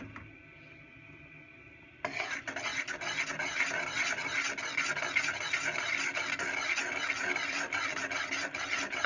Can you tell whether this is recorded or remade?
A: recorded